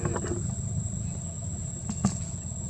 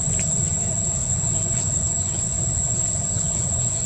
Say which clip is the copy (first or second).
second